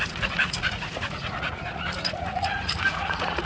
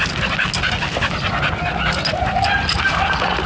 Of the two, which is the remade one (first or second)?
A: first